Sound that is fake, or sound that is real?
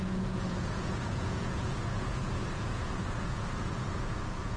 fake